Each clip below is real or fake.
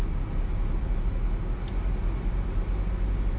real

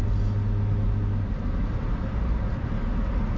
real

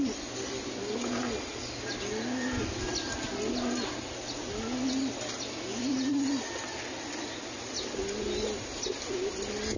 real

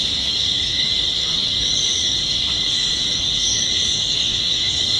fake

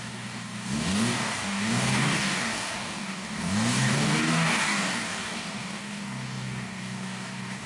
fake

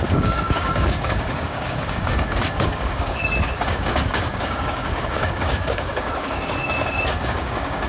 fake